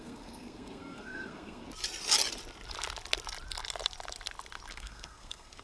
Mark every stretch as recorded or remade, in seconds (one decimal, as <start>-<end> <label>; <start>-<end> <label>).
0.0-1.6 remade; 1.6-4.7 recorded; 4.7-5.6 remade